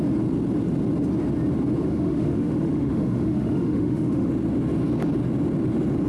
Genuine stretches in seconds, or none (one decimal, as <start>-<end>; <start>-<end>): 0.0-1.9; 4.3-6.1